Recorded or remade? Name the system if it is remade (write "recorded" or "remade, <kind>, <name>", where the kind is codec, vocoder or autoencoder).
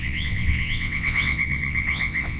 remade, vocoder, WaveNeXt